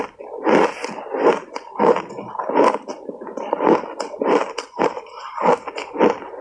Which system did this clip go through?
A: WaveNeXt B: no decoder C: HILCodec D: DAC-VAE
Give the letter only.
B